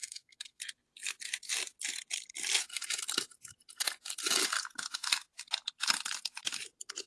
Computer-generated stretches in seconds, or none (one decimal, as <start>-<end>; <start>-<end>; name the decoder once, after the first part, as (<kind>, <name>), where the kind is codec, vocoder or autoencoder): 0.0-0.6 (codec, SNAC)